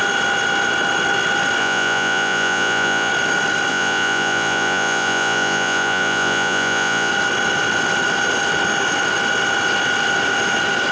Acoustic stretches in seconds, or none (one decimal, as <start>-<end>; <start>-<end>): 0.0-1.6; 3.1-3.7; 7.1-10.9